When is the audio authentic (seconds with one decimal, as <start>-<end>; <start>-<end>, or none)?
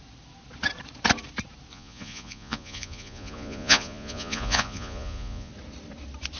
0.0-1.7; 5.5-6.4